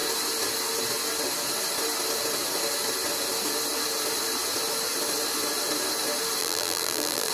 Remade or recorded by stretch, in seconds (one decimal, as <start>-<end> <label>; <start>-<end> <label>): 0.0-6.4 recorded; 6.4-7.3 remade